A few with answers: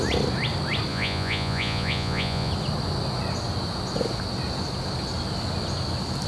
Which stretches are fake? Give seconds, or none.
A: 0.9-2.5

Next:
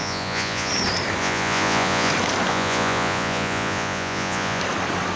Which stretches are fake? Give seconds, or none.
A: 0.0-0.7; 1.2-2.1; 2.5-4.6

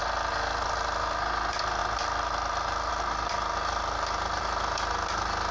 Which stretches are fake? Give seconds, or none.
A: none

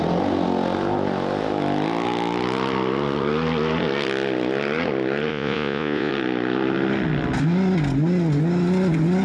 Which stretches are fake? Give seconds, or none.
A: 5.3-6.1

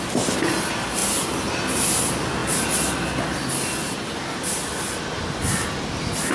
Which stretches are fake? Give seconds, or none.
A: none

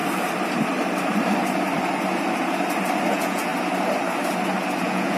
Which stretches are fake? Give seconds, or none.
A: 3.1-3.5; 4.8-5.2

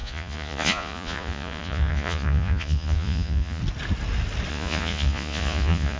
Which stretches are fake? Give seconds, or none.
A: 0.0-3.6; 4.5-6.0

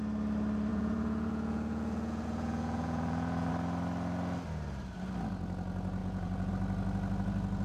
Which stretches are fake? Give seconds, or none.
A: 0.7-3.5; 6.0-6.5